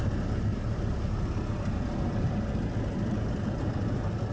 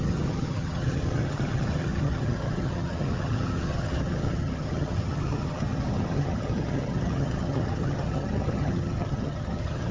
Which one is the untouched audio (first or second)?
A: first